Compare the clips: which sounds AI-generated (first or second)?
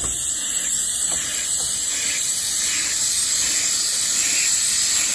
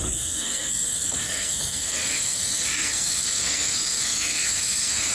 second